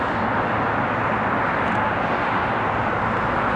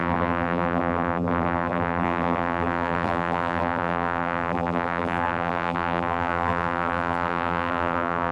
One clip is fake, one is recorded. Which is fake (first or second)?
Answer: second